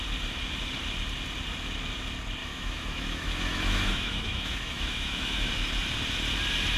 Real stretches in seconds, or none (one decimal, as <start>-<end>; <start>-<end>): 0.0-2.4; 5.6-6.8